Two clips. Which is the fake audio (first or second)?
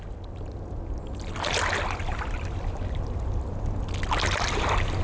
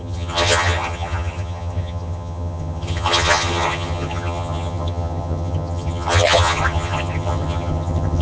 second